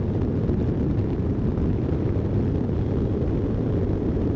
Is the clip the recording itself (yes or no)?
yes